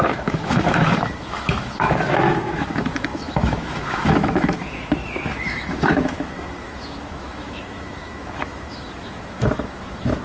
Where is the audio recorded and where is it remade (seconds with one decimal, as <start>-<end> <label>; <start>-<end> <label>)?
0.0-10.2 remade